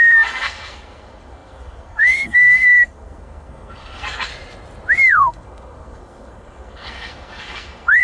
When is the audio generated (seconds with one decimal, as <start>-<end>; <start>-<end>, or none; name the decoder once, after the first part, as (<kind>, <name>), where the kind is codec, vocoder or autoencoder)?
0.0-4.3 (codec, SNAC); 5.1-8.0